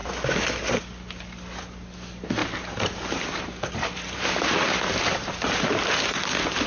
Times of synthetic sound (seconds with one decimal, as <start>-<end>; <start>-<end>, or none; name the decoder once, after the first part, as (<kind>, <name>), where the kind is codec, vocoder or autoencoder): 2.4-6.7 (vocoder, BigVGAN v2)

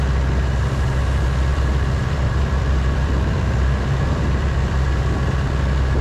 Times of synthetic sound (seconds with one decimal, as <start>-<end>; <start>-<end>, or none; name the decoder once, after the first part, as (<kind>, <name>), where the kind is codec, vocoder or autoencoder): 1.5-5.1 (vocoder, BigVGAN v2)